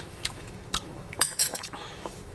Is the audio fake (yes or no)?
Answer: yes